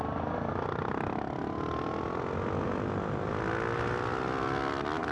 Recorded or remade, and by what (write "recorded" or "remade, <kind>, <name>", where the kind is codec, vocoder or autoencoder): recorded